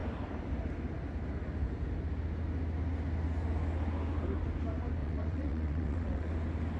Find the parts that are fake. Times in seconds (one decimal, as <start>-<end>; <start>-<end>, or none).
5.0-6.3